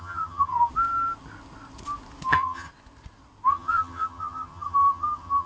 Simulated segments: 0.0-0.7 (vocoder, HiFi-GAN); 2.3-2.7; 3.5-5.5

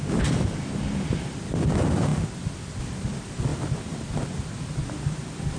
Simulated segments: 0.0-2.1 (vocoder, BigVGAN v2); 2.6-3.5; 4.4-5.6

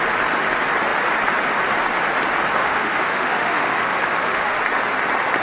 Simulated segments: 2.6-4.6 (autoencoder, DAC-VAE)

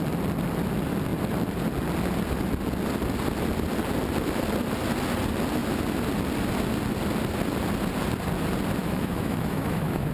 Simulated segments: 8.8-10.1 (autoencoder, DAC-VAE)

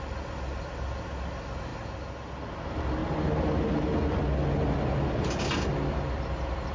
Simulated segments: none